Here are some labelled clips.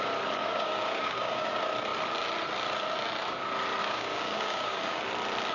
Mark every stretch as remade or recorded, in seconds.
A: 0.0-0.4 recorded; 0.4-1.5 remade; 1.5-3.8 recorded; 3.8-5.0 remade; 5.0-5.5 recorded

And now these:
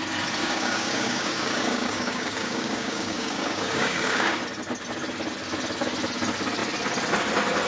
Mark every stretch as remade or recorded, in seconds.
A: 0.0-0.4 recorded; 0.4-4.4 remade; 4.4-7.7 recorded